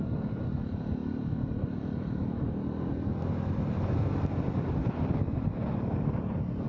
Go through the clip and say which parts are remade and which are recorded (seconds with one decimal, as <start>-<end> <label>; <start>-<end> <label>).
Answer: 0.0-1.0 recorded; 1.0-5.0 remade; 5.0-6.7 recorded